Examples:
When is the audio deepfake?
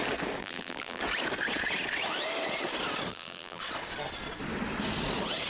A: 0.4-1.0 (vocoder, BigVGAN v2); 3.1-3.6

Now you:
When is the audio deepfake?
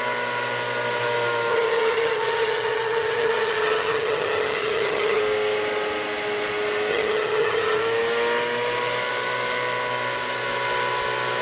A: 1.5-5.2 (vocoder, HiFi-GAN); 6.9-7.8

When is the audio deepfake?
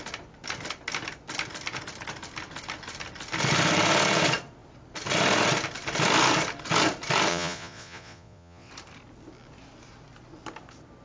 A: 7.3-8.7 (vocoder, Vocos)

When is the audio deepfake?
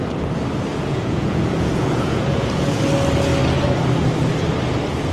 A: 0.7-2.8 (vocoder, Vocos)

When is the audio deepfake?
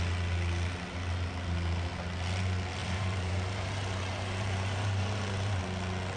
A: 2.8-5.6 (vocoder, BigVGAN v2)